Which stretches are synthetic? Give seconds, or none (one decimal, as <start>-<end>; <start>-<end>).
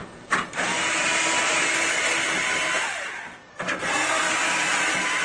3.5-4.3